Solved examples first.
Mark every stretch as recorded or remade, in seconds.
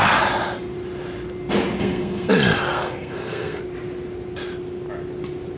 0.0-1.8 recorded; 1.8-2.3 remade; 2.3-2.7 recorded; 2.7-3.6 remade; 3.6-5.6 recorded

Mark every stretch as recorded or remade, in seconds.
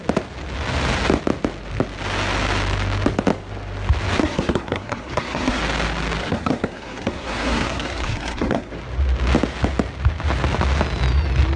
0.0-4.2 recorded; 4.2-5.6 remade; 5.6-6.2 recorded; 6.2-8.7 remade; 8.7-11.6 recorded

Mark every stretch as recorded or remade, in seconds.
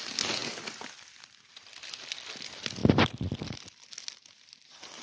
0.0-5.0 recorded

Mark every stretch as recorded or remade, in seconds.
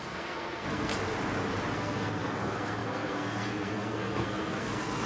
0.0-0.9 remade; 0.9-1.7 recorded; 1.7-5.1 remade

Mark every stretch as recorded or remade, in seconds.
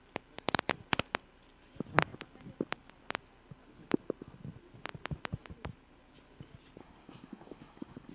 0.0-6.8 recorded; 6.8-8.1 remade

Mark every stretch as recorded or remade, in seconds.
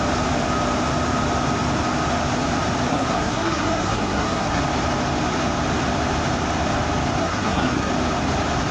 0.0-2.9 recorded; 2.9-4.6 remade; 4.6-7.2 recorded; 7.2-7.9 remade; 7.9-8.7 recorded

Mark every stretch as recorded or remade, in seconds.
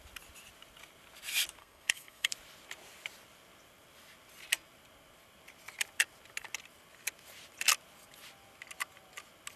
0.0-1.6 recorded; 1.6-2.3 remade; 2.3-9.6 recorded